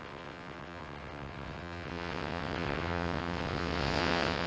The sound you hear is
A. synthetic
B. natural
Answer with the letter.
A